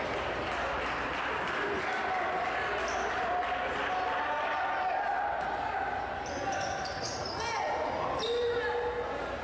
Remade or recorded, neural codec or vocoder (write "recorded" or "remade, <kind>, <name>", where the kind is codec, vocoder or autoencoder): recorded